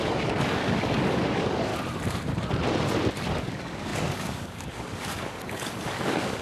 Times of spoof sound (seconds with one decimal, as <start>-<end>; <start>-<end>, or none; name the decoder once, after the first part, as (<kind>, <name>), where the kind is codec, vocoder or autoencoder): 0.0-1.7 (codec, DAC); 3.4-6.4